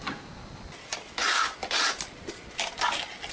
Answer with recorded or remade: recorded